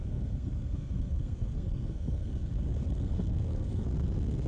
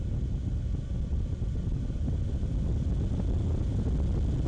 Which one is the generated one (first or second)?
first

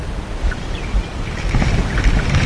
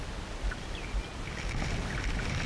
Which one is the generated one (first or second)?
first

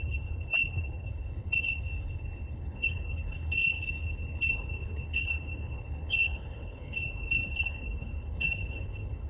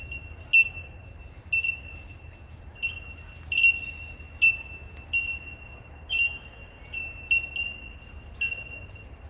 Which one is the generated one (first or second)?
first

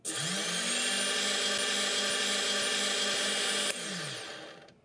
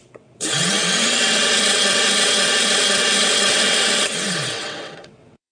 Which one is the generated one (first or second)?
second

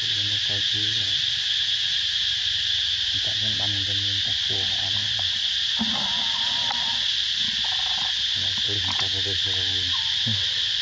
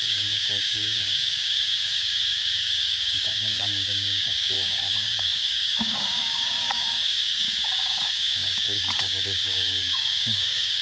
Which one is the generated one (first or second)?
second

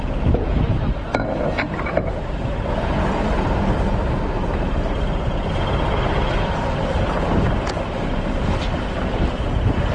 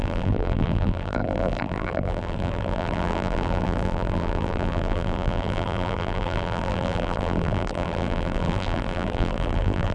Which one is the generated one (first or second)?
second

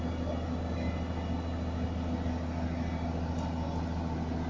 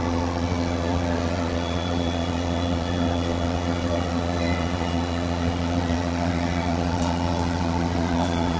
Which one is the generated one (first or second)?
second